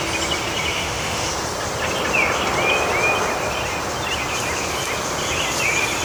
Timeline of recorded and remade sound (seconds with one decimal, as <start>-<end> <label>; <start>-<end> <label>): 0.0-0.7 recorded; 0.7-1.3 remade; 1.3-6.0 recorded